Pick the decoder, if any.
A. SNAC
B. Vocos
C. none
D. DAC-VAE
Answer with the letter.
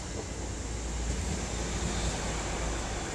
C